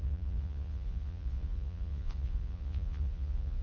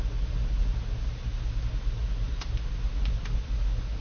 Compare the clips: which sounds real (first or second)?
second